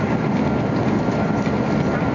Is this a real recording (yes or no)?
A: yes